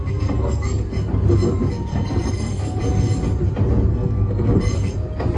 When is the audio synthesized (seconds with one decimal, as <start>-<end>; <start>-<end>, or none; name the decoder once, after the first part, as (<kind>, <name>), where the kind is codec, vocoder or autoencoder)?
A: 0.0-0.8 (codec, SNAC); 1.9-2.8; 3.9-4.6